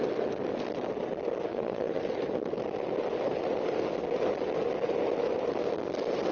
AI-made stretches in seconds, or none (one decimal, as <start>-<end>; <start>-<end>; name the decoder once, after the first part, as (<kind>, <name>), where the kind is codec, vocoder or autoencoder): 1.5-2.0 (vocoder, Vocos)